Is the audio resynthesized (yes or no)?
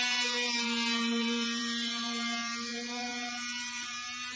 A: yes